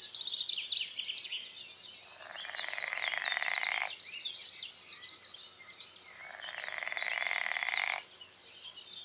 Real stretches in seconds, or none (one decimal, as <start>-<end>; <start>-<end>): 0.0-9.0